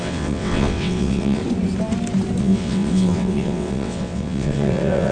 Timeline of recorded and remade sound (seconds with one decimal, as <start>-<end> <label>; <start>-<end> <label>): 0.0-1.4 remade; 1.4-2.4 recorded; 2.4-5.1 remade